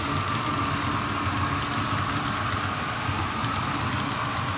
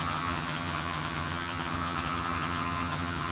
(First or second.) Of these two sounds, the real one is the first